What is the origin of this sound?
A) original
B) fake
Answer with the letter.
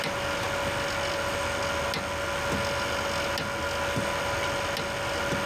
A